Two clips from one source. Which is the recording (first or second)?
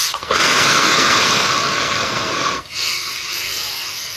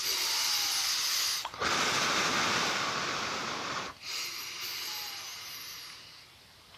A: second